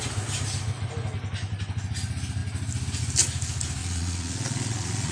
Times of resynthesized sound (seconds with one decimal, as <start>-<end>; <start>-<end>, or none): 3.8-5.1